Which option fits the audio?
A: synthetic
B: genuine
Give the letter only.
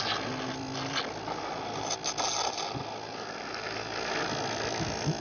B